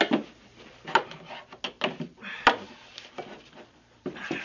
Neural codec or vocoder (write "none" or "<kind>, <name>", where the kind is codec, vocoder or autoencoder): none